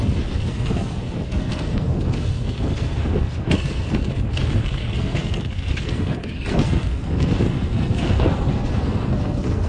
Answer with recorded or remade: remade